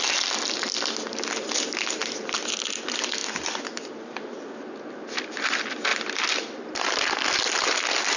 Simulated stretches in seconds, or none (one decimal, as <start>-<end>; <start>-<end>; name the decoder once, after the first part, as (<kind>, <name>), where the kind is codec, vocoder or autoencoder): 2.0-2.8 (vocoder, BigVGAN v2); 3.2-4.2; 5.9-6.9